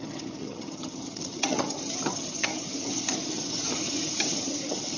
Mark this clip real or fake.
fake